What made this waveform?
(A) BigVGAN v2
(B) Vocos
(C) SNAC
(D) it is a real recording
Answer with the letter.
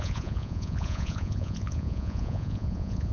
B